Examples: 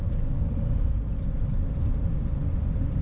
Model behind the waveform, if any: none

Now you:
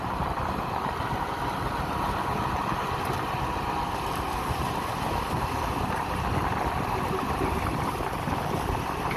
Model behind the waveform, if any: none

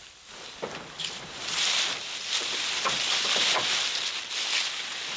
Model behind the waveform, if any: none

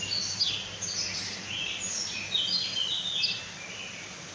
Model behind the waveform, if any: none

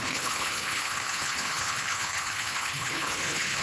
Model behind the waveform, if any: codec, HILCodec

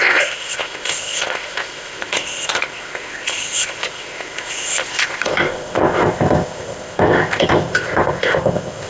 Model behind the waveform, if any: codec, ZipCodec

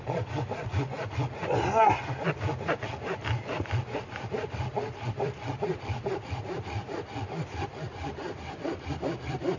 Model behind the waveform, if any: none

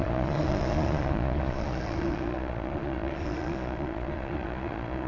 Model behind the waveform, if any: vocoder, Vocos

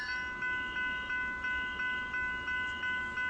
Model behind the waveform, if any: none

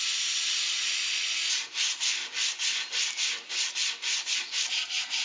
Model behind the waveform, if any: none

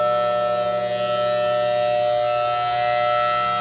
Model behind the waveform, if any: none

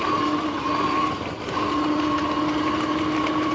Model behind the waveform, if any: none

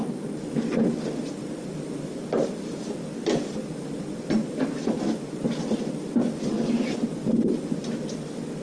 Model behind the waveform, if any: none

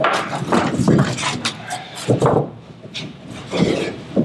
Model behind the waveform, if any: vocoder, BigVGAN v2